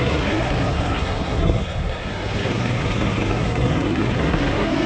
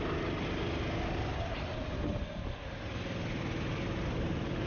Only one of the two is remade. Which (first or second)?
first